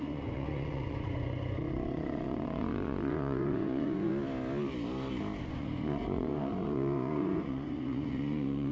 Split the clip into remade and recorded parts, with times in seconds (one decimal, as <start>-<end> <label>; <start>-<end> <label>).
0.0-4.1 remade; 4.1-5.4 recorded; 5.4-8.7 remade